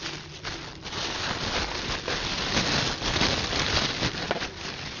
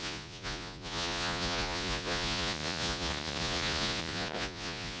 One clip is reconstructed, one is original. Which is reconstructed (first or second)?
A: second